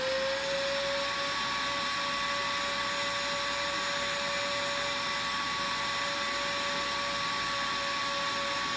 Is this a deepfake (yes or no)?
no